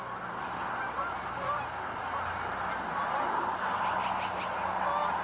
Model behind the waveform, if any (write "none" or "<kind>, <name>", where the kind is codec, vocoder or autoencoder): none